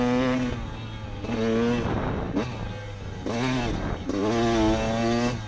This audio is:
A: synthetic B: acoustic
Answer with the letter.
B